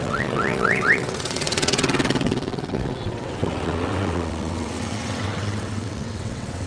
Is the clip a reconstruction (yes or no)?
yes